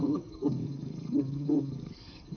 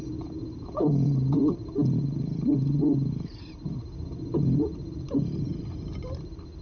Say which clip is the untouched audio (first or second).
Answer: second